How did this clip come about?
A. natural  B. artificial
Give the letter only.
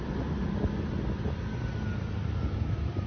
A